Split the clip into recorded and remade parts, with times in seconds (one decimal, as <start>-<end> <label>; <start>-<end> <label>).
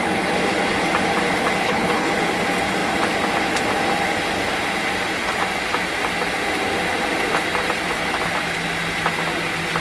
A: 0.0-1.6 recorded; 1.6-2.1 remade; 2.1-9.8 recorded